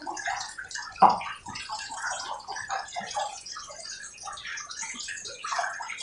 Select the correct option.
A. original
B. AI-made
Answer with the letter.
B